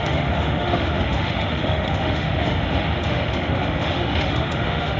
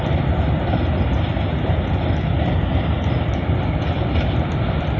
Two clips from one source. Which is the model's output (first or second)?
first